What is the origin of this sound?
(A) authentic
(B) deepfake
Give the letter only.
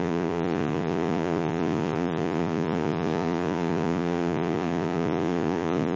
B